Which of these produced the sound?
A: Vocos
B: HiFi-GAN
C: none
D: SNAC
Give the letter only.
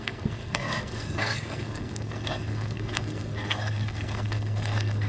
D